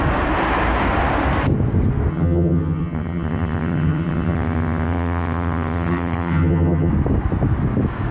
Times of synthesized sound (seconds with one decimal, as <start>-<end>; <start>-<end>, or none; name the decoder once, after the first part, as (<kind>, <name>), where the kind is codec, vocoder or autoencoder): 2.1-6.9 (vocoder, HiFi-GAN)